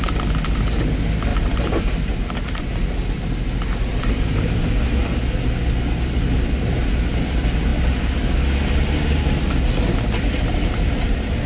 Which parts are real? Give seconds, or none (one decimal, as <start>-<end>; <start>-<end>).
0.0-1.3; 2.6-3.9; 4.6-11.5